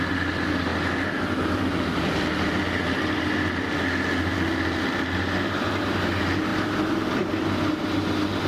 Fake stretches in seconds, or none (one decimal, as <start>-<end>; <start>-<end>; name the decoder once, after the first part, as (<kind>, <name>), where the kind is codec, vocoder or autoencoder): none